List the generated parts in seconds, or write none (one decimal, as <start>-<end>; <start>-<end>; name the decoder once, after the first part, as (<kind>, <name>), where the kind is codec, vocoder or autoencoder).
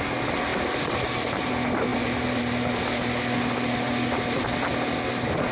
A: 0.5-1.5 (vocoder, BigVGAN v2); 1.9-2.5